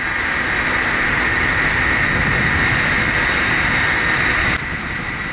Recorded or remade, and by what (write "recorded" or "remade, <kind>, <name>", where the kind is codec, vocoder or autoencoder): recorded